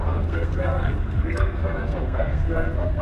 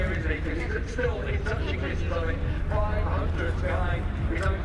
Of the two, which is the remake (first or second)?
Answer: first